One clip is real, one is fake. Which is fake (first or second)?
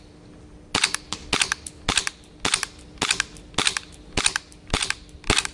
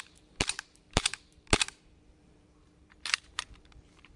second